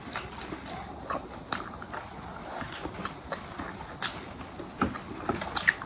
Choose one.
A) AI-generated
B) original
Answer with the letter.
B